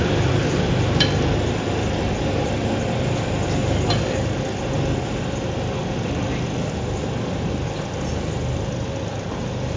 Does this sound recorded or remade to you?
recorded